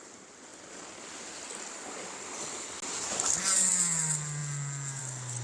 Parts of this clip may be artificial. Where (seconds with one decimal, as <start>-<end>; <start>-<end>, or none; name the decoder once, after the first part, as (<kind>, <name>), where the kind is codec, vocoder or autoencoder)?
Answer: none